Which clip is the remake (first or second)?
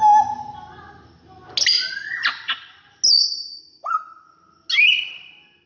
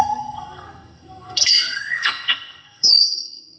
second